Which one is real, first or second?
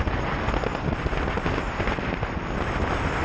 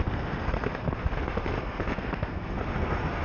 first